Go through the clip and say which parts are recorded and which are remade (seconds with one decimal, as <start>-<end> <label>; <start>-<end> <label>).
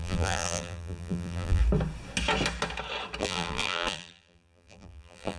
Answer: 0.0-1.6 remade; 1.6-3.2 recorded; 3.2-5.4 remade